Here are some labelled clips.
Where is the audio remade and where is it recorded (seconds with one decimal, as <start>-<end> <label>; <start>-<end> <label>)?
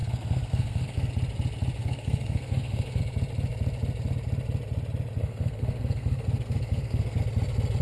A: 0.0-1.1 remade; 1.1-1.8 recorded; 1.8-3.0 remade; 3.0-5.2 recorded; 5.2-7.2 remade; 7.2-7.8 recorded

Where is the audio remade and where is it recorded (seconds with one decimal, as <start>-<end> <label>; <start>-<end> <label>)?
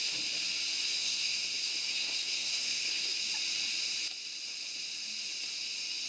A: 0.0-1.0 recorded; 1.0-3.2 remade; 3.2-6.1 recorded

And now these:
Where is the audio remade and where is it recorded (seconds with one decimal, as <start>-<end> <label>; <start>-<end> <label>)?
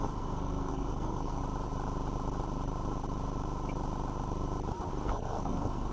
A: 0.0-1.4 remade; 1.4-4.9 recorded; 4.9-5.9 remade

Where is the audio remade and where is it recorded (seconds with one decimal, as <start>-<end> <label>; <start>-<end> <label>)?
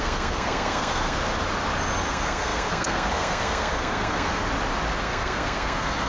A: 0.0-1.2 remade; 1.2-2.1 recorded; 2.1-4.4 remade; 4.4-5.0 recorded; 5.0-6.1 remade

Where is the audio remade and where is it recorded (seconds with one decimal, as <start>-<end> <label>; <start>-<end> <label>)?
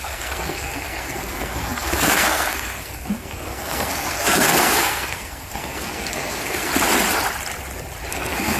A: 0.0-6.7 remade; 6.7-8.1 recorded; 8.1-8.6 remade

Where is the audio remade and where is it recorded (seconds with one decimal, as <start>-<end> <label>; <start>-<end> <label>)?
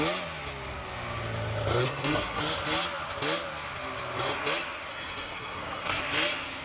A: 0.0-1.8 recorded; 1.8-2.4 remade; 2.4-4.9 recorded; 4.9-6.0 remade; 6.0-6.6 recorded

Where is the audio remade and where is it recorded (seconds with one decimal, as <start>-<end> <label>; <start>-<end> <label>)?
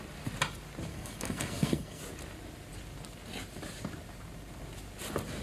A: 0.0-0.9 recorded; 0.9-2.0 remade; 2.0-5.4 recorded